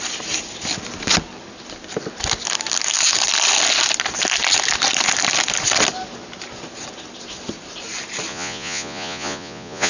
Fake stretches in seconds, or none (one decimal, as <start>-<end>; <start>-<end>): 8.3-9.9